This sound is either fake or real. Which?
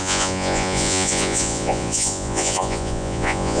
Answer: fake